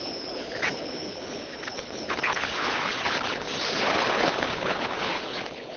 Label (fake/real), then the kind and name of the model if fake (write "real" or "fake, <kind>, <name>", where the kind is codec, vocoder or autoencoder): fake, codec, HILCodec